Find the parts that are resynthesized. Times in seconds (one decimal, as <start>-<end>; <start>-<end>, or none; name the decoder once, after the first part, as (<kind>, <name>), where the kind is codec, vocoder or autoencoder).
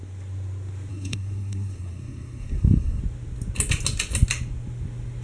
0.9-3.0 (codec, SNAC)